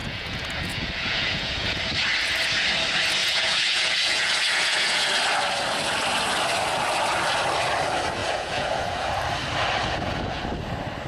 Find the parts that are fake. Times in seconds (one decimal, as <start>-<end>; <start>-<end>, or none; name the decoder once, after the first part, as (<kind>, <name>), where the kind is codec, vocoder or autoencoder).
0.0-1.8 (vocoder, Vocos); 3.2-5.1; 8.2-9.1; 9.8-10.4